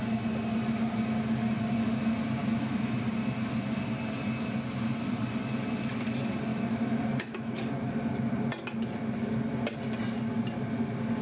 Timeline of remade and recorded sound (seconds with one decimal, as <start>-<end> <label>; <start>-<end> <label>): 0.0-2.4 recorded; 2.4-3.0 remade; 3.0-6.5 recorded; 6.5-7.6 remade; 7.6-11.2 recorded